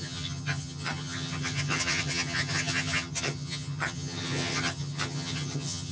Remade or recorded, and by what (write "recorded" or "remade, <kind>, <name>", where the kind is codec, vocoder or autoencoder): remade, vocoder, HiFi-GAN